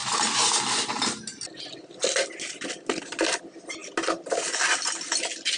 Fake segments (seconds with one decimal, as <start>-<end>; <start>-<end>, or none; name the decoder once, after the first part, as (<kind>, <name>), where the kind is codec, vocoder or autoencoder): none